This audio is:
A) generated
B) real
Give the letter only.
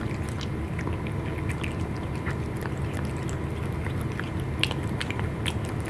B